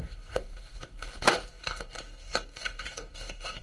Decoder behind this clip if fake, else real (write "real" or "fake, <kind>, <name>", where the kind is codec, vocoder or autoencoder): fake, codec, DAC